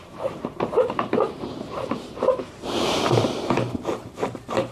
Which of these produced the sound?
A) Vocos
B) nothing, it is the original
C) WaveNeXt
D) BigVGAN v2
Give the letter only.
D